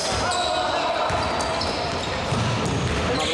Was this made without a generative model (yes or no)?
yes